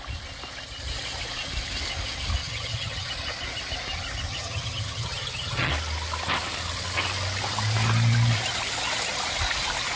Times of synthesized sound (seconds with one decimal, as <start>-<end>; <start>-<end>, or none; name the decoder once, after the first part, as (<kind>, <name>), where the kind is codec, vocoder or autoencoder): 2.4-3.1 (vocoder, HiFi-GAN); 4.3-5.7